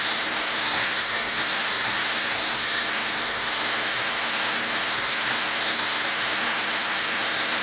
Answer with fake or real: fake